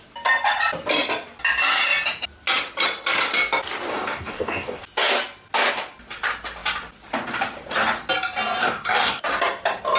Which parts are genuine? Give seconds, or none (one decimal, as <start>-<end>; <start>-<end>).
0.0-3.9; 4.8-8.6; 9.2-10.0